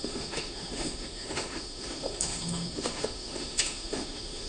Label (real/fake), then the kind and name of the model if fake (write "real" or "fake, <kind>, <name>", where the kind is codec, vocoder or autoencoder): fake, autoencoder, DAC-VAE